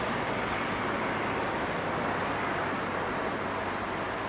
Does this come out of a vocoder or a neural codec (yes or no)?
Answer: no